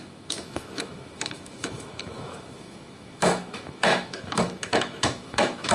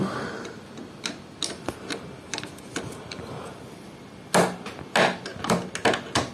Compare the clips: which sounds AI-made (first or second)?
first